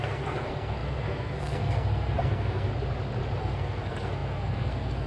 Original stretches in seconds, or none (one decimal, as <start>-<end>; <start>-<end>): 2.7-3.4